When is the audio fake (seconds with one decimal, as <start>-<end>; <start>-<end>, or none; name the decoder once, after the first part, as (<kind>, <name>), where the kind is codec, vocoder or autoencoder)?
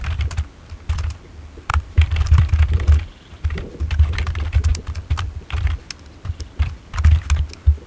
1.7-2.5 (vocoder, BigVGAN v2)